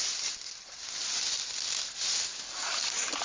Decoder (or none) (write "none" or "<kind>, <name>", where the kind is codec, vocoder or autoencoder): none